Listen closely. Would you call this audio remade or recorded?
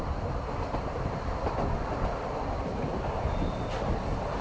recorded